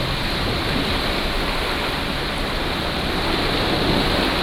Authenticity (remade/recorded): recorded